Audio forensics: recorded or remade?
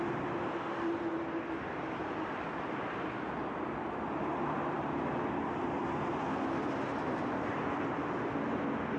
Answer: remade